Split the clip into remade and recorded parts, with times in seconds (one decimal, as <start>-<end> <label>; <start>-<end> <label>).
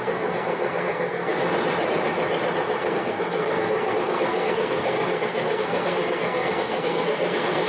0.0-1.3 remade; 1.3-2.8 recorded; 2.8-7.7 remade